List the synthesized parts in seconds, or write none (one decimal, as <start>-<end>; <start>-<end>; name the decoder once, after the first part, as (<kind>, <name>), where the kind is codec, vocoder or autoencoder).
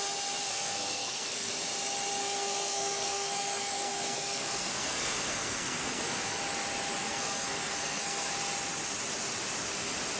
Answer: 0.4-1.5 (codec, SNAC); 2.2-6.4; 7.0-8.3